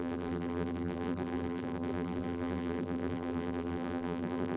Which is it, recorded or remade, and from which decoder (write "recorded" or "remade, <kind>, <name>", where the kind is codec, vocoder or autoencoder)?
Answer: remade, vocoder, BigVGAN v2